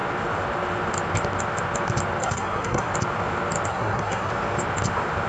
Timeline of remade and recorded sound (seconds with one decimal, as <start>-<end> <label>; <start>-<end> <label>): 0.0-2.2 recorded; 2.2-2.9 remade; 2.9-3.7 recorded; 3.7-4.3 remade; 4.3-5.3 recorded